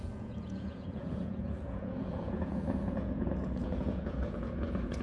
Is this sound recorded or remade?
remade